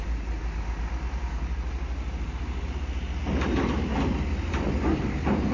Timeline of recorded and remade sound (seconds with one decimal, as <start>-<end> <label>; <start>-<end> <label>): 0.0-3.9 recorded; 3.9-4.7 remade; 4.7-5.5 recorded